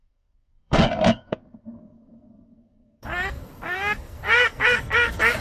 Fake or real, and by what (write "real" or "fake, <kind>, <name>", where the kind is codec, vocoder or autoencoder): fake, codec, SNAC